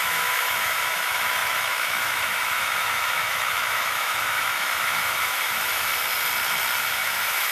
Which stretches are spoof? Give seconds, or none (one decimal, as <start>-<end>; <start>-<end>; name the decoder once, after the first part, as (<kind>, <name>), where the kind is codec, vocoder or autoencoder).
0.0-5.9 (autoencoder, DAC-VAE); 6.8-7.5